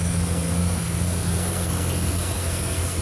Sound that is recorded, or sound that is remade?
remade